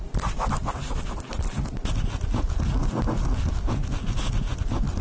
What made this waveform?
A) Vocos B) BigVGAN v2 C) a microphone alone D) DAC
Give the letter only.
C